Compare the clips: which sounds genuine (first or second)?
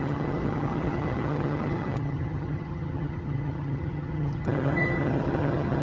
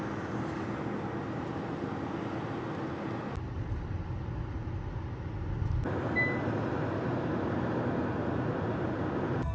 second